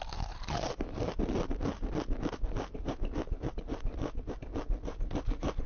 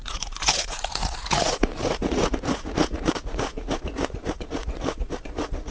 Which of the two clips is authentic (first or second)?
first